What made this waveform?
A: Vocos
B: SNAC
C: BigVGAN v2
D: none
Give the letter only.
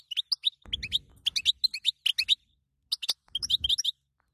D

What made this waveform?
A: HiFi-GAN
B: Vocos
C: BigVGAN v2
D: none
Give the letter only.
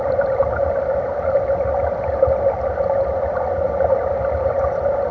D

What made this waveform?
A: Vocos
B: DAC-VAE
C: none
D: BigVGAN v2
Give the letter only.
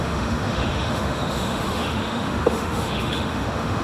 B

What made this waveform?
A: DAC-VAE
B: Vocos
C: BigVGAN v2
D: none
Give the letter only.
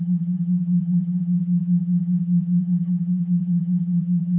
C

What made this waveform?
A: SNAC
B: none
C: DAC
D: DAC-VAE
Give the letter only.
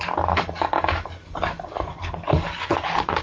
C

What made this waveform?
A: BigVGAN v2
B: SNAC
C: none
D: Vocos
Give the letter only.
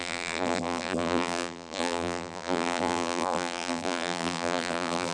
A